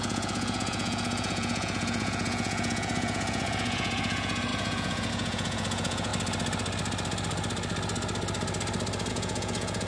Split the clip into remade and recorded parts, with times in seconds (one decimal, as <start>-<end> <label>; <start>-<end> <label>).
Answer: 0.0-6.1 remade; 6.1-9.1 recorded; 9.1-9.9 remade